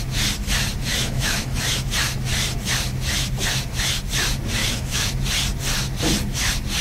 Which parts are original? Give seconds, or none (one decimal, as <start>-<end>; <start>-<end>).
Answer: 0.0-0.9; 1.9-4.6; 5.1-6.8